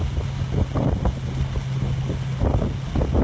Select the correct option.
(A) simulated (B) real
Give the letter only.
B